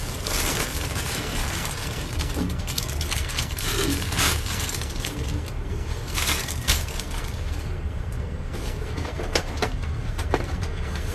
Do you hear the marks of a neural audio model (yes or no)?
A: yes